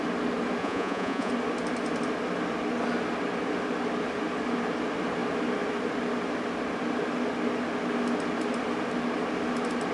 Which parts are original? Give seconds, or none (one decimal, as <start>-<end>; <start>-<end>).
0.0-0.6; 1.3-9.9